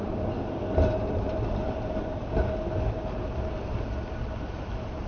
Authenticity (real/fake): real